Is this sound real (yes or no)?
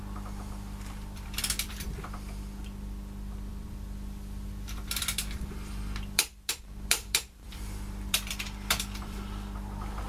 no